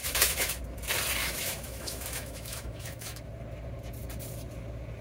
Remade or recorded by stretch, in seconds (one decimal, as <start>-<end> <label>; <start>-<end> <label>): 0.0-0.6 remade; 0.6-1.2 recorded; 1.2-3.2 remade; 3.2-5.0 recorded